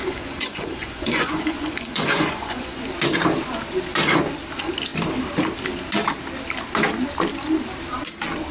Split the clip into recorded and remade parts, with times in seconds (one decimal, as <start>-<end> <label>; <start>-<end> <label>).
0.0-2.8 remade; 2.8-8.5 recorded